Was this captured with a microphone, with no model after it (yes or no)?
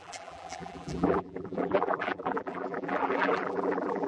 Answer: no